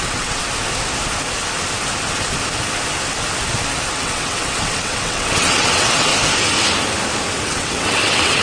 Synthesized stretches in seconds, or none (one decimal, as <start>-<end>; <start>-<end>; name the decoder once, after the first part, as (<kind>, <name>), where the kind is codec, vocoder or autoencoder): 0.0-0.4 (vocoder, WaveNeXt); 3.9-6.1; 7.4-8.4